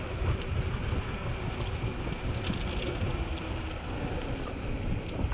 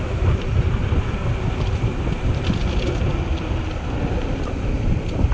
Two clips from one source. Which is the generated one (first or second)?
second